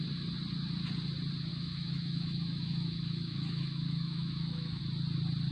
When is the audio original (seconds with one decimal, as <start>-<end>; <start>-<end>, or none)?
0.0-1.5; 4.8-5.5